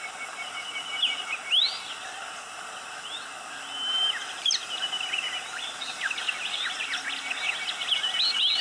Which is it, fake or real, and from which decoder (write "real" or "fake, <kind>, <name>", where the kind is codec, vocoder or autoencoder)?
real